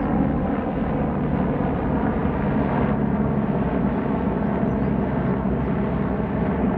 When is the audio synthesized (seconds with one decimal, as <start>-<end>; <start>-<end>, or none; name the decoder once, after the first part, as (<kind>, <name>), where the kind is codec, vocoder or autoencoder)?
none